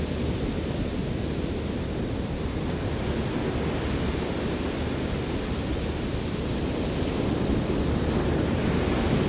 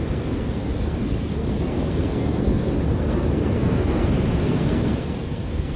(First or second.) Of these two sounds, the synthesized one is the second